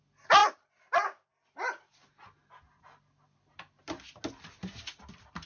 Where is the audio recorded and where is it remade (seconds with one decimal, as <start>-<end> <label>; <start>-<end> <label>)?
0.0-5.5 recorded